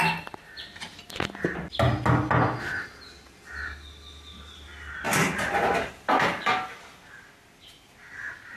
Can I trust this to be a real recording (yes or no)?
yes